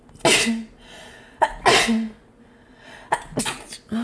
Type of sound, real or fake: real